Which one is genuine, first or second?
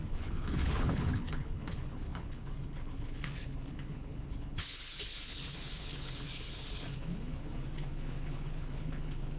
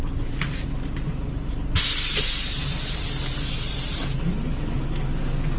second